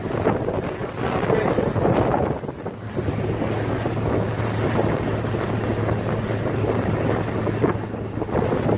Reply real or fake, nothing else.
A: real